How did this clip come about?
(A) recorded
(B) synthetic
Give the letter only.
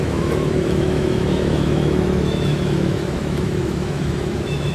B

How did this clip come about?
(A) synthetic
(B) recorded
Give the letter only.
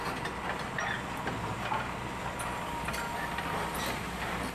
B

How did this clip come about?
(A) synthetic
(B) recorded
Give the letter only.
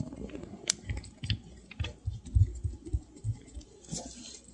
B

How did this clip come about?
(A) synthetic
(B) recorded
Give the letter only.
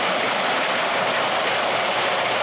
B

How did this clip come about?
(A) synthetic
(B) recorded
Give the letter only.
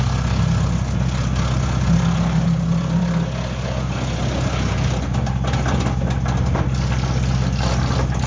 B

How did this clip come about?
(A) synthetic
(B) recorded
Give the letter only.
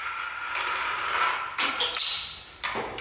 B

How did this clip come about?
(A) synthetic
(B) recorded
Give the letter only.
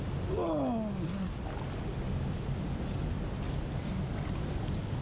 B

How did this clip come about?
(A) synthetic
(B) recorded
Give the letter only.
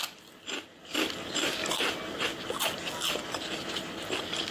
B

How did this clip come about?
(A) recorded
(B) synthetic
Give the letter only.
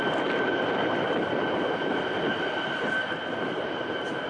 A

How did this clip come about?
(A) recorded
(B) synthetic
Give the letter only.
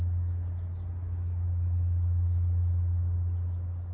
A